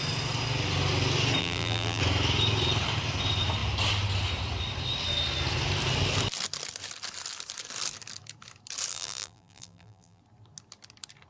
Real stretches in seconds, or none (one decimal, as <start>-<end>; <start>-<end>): 0.0-1.4; 2.0-8.9; 10.2-11.3